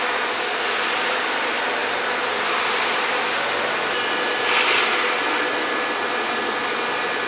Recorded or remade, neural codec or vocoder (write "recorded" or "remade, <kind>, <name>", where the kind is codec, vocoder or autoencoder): recorded